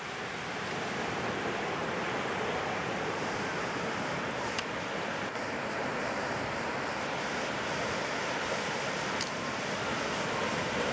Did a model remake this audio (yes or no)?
yes